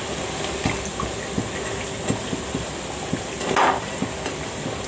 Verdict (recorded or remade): recorded